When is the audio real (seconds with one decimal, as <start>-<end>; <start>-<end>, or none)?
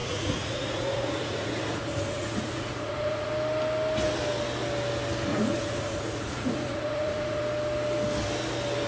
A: 3.3-5.3; 7.4-8.9